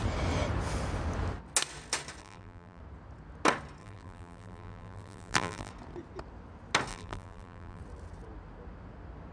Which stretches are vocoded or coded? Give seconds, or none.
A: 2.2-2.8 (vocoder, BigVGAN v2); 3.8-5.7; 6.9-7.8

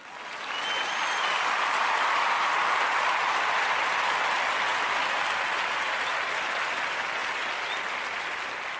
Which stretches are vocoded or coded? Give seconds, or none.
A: 1.3-3.0 (vocoder, BigVGAN v2); 4.7-5.5; 7.2-8.1

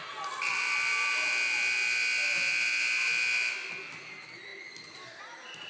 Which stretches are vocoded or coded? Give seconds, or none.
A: none

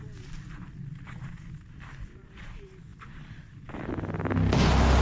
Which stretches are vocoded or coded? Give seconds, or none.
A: 2.9-3.9 (vocoder, BigVGAN v2)

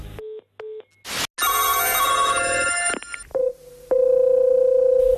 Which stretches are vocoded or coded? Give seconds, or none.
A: 3.3-3.9 (vocoder, BigVGAN v2)

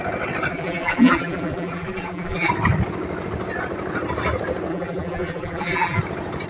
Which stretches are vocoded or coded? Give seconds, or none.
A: 0.5-2.5 (vocoder, BigVGAN v2); 4.7-6.0

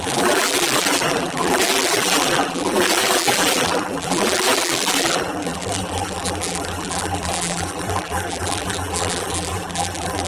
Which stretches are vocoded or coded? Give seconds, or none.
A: 0.0-10.3 (vocoder, BigVGAN v2)